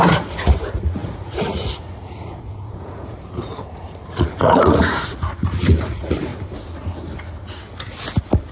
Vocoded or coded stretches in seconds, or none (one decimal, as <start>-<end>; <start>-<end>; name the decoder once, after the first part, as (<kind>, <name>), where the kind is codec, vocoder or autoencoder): 0.0-6.3 (vocoder, Vocos)